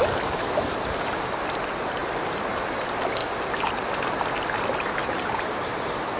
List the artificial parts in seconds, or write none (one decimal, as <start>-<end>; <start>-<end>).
2.0-2.6; 5.0-6.2

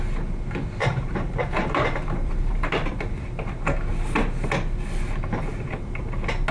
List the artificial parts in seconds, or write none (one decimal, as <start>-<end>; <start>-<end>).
0.8-2.9

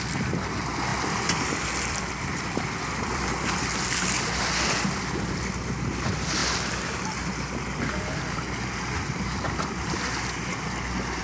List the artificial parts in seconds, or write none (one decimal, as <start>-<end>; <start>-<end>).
0.9-4.6

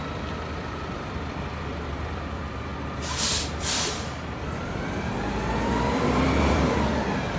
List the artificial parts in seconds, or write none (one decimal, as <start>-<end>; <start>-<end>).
0.0-7.4

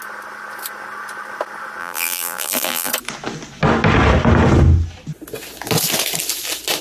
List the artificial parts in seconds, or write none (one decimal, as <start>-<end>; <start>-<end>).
1.8-2.9

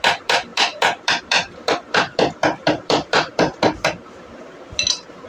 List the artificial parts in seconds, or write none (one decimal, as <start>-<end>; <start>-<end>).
0.0-3.3; 3.8-5.3

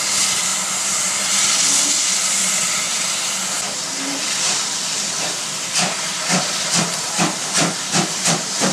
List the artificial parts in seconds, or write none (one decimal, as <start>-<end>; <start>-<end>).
0.0-0.5; 2.5-2.9; 3.6-8.7

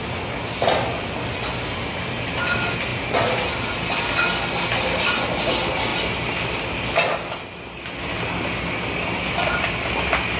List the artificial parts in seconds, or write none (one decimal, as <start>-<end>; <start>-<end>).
5.9-10.4